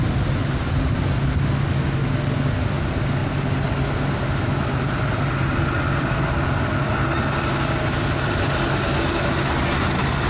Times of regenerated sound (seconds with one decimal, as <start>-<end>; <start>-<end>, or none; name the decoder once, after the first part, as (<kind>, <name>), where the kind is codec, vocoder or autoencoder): none